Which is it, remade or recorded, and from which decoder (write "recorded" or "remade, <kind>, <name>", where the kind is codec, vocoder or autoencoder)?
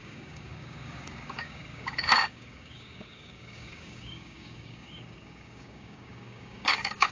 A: remade, codec, DAC